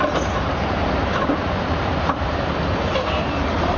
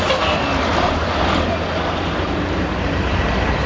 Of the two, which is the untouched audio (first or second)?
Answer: second